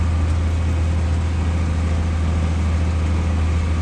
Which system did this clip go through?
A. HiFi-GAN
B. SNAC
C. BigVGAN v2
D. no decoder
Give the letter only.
D